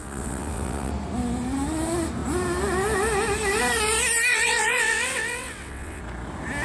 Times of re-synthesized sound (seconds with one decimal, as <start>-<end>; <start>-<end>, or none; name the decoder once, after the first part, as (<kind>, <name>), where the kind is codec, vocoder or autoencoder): 0.0-0.9 (vocoder, WaveNeXt); 4.3-6.0